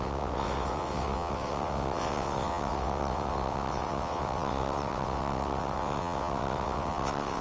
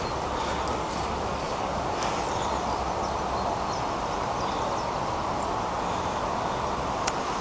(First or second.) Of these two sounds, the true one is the second